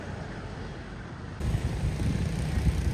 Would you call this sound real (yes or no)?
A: yes